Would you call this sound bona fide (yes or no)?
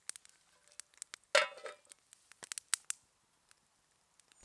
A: yes